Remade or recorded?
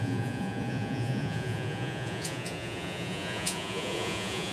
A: remade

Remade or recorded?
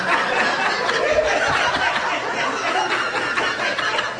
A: recorded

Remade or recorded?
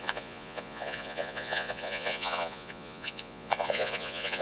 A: remade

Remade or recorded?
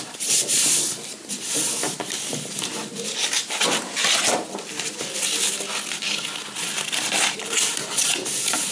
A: recorded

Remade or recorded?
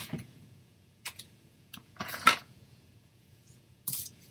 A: remade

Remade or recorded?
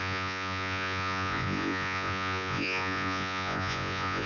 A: remade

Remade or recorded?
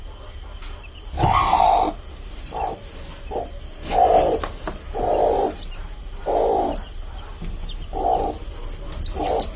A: recorded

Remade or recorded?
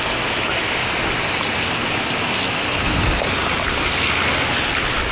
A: recorded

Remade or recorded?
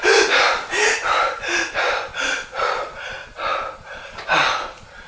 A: recorded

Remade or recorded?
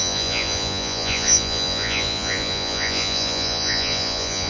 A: remade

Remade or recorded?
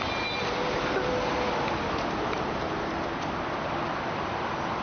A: recorded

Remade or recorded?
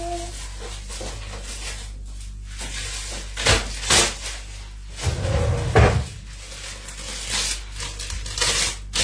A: recorded